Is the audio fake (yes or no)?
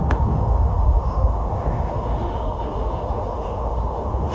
yes